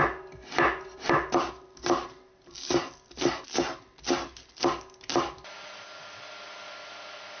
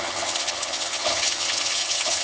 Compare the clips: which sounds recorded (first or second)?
first